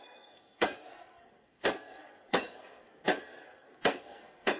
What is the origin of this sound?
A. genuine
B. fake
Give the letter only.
B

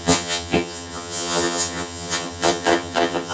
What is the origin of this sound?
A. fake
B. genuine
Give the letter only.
A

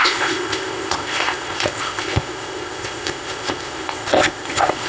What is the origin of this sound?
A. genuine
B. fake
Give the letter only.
B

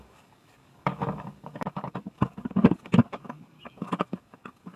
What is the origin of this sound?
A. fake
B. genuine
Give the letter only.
A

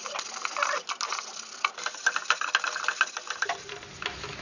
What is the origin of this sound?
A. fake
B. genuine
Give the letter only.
B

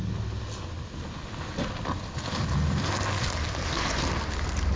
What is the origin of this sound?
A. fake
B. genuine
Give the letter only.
B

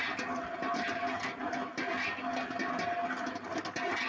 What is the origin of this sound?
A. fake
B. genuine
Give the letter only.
B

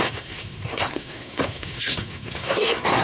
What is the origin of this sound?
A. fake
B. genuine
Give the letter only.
A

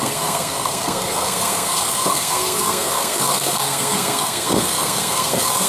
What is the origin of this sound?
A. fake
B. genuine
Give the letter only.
A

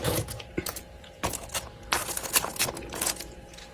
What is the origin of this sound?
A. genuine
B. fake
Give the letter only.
B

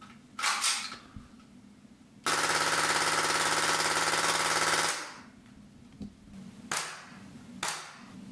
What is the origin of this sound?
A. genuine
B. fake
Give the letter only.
A